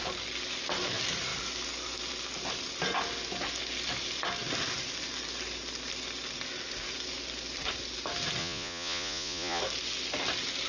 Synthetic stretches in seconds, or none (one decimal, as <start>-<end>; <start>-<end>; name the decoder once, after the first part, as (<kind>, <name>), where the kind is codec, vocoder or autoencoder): 8.4-9.6 (vocoder, Vocos)